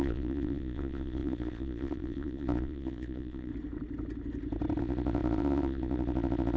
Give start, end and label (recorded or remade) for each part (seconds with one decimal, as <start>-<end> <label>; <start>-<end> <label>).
0.0-3.5 remade; 3.5-4.8 recorded; 4.8-6.6 remade